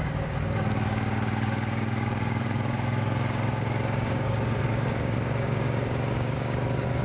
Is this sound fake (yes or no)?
yes